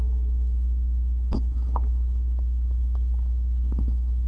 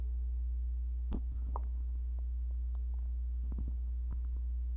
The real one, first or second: second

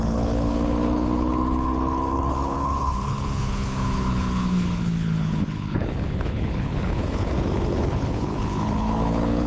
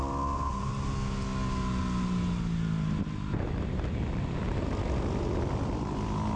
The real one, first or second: second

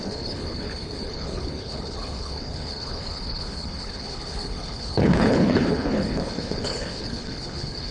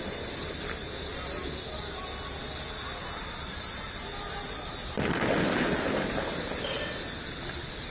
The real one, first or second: second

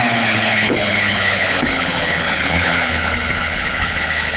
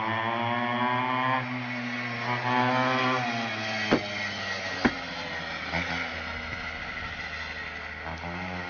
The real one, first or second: second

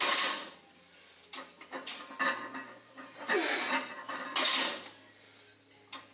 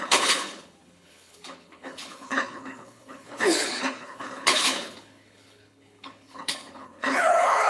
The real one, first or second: first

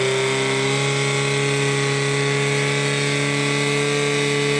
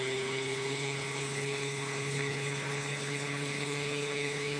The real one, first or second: first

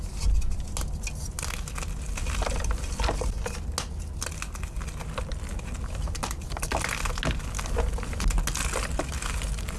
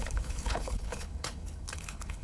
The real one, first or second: first